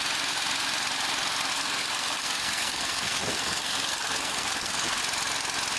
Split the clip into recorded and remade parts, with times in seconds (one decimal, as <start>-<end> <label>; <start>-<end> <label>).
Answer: 0.0-1.5 recorded; 1.5-5.0 remade; 5.0-5.8 recorded